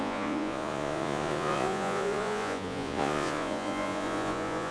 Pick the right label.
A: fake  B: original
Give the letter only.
A